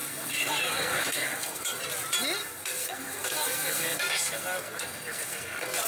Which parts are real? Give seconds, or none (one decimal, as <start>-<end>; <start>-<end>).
1.8-2.4